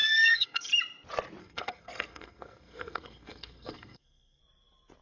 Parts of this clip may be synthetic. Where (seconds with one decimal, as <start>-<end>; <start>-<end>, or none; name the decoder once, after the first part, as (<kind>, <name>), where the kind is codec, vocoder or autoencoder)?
0.0-0.7 (codec, SNAC); 1.4-4.4